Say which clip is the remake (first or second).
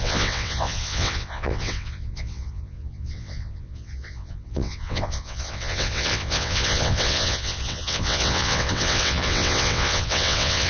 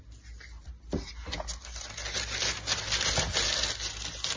first